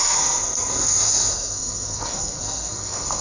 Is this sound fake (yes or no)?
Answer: yes